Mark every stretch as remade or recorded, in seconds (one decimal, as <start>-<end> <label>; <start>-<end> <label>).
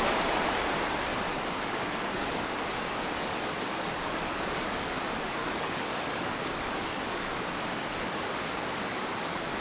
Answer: 0.0-1.3 recorded; 1.3-5.0 remade; 5.0-5.4 recorded; 5.4-9.6 remade